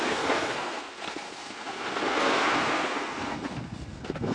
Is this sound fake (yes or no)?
yes